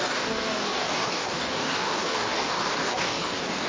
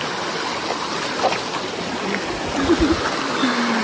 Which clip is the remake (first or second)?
first